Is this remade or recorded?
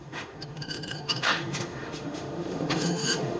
remade